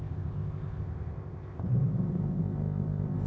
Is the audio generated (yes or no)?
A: yes